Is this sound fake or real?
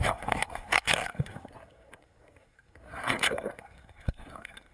fake